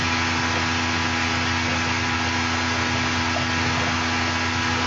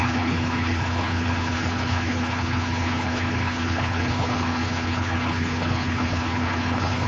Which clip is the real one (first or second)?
first